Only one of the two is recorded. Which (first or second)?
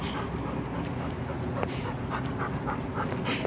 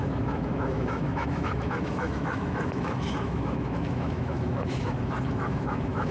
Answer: first